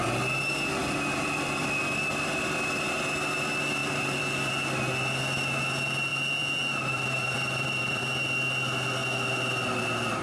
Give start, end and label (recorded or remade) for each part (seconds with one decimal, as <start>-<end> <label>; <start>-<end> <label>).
0.0-0.8 recorded; 0.8-1.8 remade; 1.8-3.8 recorded; 3.8-4.5 remade; 4.5-6.1 recorded; 6.1-8.0 remade; 8.0-10.2 recorded